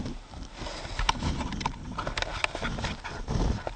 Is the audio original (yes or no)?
yes